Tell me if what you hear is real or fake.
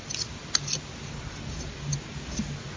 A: real